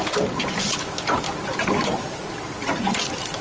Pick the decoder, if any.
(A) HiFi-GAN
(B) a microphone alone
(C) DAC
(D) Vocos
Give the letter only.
B